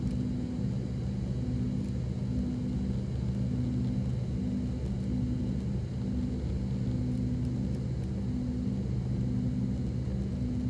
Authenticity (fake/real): real